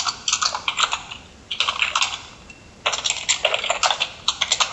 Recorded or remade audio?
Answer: recorded